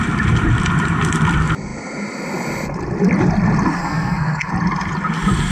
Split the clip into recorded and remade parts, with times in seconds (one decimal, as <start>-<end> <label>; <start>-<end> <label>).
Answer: 0.0-3.8 recorded; 3.8-4.5 remade; 4.5-5.5 recorded